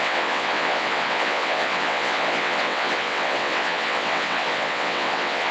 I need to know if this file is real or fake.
fake